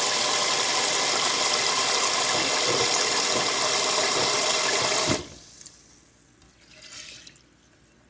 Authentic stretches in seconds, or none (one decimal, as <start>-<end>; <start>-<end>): 0.0-8.1